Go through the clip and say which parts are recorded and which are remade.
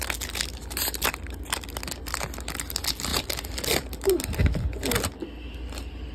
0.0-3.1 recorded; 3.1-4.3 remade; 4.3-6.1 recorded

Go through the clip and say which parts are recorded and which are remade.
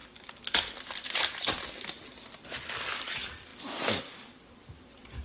0.0-5.2 recorded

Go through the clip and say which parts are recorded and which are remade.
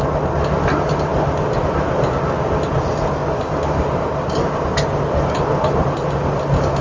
0.0-6.8 recorded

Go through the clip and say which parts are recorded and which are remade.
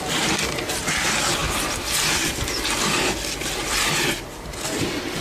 0.0-5.2 recorded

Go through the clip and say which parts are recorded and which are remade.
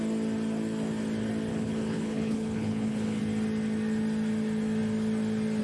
0.0-1.5 recorded; 1.5-3.2 remade; 3.2-5.6 recorded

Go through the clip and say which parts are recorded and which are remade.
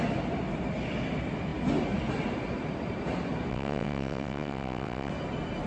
0.0-3.5 recorded; 3.5-5.1 remade; 5.1-5.7 recorded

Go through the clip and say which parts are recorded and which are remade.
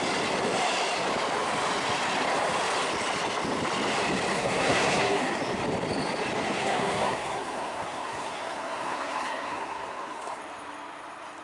0.0-4.3 recorded; 4.3-5.4 remade; 5.4-6.4 recorded; 6.4-10.4 remade; 10.4-11.4 recorded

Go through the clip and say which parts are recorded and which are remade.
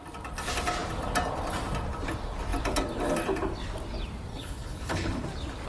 0.0-4.3 recorded; 4.3-5.2 remade; 5.2-5.7 recorded